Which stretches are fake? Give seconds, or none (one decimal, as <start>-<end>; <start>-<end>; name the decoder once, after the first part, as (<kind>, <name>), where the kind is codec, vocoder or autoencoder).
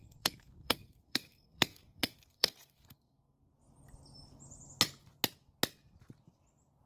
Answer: 0.0-3.5 (codec, SNAC)